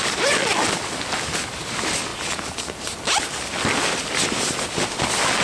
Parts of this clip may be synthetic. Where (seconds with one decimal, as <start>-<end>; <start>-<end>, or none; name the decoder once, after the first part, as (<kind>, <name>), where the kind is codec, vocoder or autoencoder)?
none